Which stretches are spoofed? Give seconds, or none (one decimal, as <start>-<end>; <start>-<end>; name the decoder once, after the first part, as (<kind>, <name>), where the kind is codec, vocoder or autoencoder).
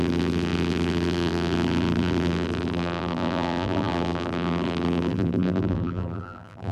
0.0-6.7 (vocoder, BigVGAN v2)